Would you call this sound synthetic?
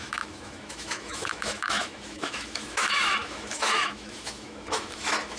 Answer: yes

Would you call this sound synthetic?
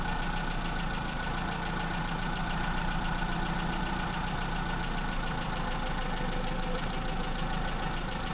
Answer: no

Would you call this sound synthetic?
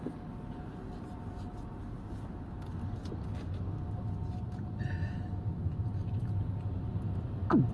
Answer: no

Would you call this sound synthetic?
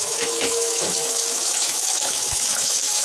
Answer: yes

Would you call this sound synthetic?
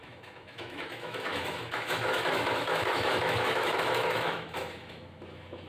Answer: yes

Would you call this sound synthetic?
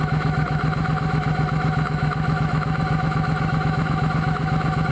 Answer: yes